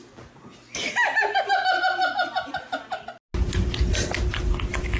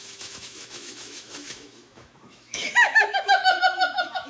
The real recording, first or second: first